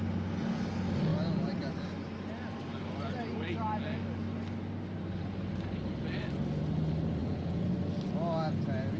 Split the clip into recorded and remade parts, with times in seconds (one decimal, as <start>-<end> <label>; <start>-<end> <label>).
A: 0.0-7.2 recorded; 7.2-7.7 remade; 7.7-9.0 recorded